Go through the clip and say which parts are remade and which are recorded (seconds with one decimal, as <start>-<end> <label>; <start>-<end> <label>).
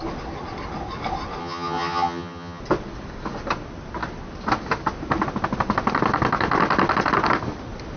0.0-1.4 recorded; 1.4-2.6 remade; 2.6-8.0 recorded